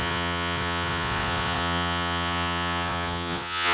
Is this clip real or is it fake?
fake